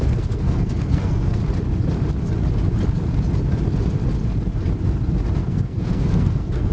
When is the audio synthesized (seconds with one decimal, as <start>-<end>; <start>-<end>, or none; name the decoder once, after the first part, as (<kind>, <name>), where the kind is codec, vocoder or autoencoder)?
0.0-1.4 (codec, SNAC); 5.4-6.7